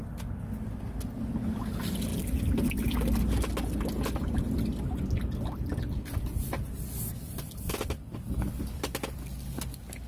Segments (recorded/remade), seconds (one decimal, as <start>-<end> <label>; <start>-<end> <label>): 0.0-10.1 recorded